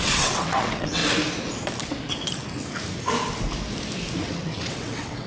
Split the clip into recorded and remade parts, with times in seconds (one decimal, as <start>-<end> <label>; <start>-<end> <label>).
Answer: 0.0-1.0 remade; 1.0-4.2 recorded; 4.2-5.3 remade